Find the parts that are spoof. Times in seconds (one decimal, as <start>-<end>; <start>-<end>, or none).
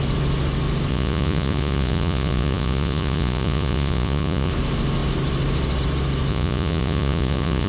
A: 0.9-4.5; 6.3-7.7